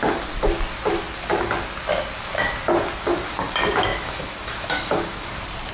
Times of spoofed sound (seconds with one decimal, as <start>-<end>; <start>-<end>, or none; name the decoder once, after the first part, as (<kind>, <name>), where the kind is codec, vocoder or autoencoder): 3.9-5.3 (autoencoder, DAC-VAE)